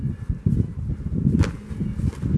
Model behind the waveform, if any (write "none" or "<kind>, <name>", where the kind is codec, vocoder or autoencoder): none